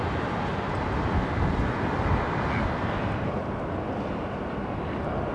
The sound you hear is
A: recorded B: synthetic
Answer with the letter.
A